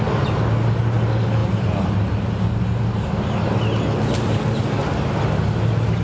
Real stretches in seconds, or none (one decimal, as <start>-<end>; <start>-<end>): 0.0-6.0